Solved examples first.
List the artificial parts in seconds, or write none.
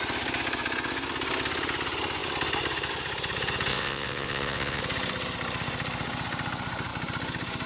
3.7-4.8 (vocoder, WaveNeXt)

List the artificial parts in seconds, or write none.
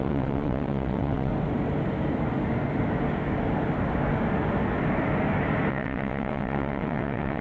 0.0-1.3 (vocoder, WaveNeXt); 5.7-7.4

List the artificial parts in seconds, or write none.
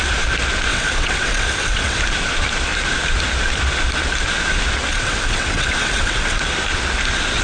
0.7-2.0 (vocoder, WaveNeXt); 4.9-6.4